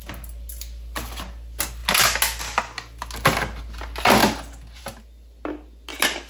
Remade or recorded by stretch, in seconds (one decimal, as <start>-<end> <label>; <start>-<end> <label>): 0.0-6.3 recorded